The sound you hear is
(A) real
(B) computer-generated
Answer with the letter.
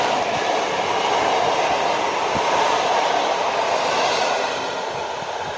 B